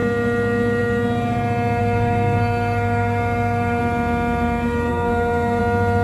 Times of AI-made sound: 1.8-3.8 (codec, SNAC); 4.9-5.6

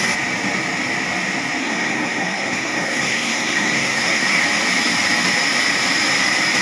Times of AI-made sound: 1.6-4.4 (codec, SNAC)

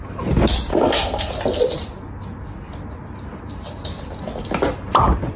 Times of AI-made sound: 0.7-1.3 (codec, SNAC)

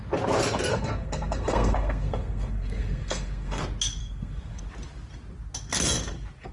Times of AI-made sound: 0.7-3.6 (codec, SNAC); 4.0-4.6

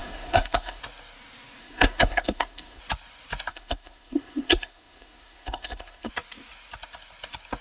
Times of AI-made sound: 0.0-0.8 (codec, SNAC); 1.6-2.8; 3.5-6.1

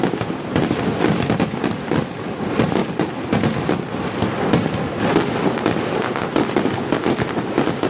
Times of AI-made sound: none

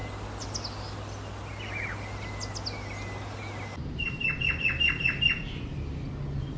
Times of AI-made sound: none